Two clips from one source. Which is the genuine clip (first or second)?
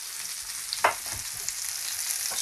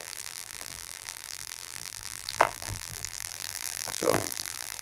first